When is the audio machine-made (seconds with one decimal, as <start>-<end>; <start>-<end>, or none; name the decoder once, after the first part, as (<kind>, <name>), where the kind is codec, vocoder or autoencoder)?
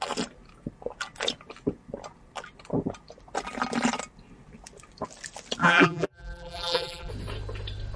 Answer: 5.6-7.1 (vocoder, BigVGAN v2)